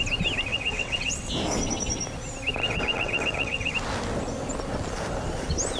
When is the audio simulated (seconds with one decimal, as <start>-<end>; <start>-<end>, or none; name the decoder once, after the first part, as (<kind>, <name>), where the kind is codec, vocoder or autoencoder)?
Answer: 0.5-1.3 (vocoder, WaveNeXt); 2.6-3.7

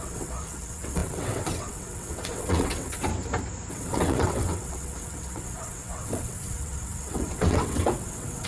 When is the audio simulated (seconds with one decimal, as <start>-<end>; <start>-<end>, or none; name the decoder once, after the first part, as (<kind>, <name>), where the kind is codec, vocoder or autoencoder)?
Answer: 0.0-3.1 (vocoder, WaveNeXt); 3.7-8.5

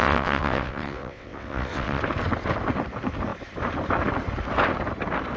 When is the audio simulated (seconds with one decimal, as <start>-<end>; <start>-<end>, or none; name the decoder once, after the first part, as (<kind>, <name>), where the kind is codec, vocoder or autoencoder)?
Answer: 0.0-2.0 (vocoder, WaveNeXt)

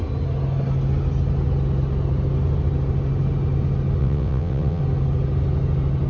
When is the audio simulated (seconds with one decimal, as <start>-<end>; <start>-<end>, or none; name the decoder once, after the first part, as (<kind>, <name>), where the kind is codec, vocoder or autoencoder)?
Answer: 4.0-4.8 (vocoder, WaveNeXt)

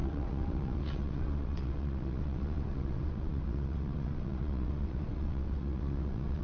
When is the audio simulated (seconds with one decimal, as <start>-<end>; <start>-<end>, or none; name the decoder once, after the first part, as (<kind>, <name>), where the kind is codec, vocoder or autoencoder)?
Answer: 0.0-6.4 (vocoder, WaveNeXt)

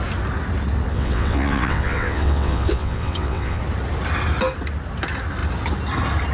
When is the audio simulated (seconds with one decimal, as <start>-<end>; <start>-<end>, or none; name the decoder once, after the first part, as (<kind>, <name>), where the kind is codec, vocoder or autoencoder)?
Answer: 0.9-3.6 (vocoder, WaveNeXt)

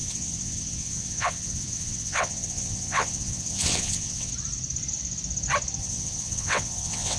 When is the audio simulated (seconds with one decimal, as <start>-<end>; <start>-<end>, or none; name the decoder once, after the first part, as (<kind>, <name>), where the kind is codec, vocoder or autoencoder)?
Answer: 0.0-4.3 (vocoder, WaveNeXt); 5.8-7.2

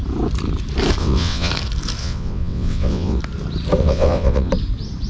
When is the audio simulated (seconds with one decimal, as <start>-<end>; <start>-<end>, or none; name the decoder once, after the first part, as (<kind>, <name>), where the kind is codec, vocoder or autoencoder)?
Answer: 1.0-1.5 (vocoder, WaveNeXt); 2.0-3.2; 3.8-4.5